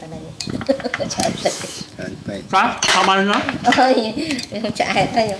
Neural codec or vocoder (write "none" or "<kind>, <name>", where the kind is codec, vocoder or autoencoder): autoencoder, DAC-VAE